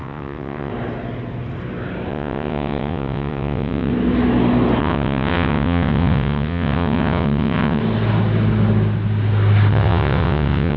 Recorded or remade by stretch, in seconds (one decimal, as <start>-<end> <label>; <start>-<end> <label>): 0.0-0.7 remade; 0.7-2.1 recorded; 2.1-3.9 remade; 3.9-4.8 recorded; 4.8-7.8 remade; 7.8-9.7 recorded; 9.7-10.8 remade